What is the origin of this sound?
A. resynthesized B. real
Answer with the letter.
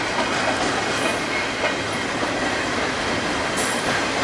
B